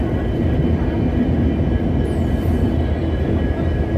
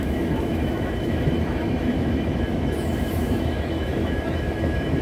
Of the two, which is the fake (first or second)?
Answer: second